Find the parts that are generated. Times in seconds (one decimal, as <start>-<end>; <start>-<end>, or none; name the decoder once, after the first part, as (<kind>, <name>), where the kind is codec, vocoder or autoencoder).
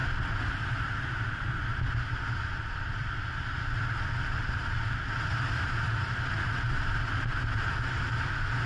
none